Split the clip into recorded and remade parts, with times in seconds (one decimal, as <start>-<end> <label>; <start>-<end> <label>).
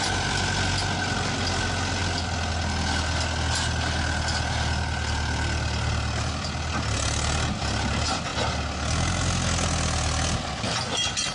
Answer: 0.0-11.3 recorded